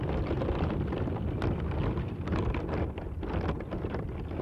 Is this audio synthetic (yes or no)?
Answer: no